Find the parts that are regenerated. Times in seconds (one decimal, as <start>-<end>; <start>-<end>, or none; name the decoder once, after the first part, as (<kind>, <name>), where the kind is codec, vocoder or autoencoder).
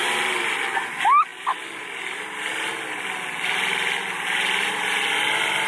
none